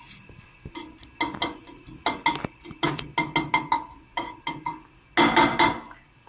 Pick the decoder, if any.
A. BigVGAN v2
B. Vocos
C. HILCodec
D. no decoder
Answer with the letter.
D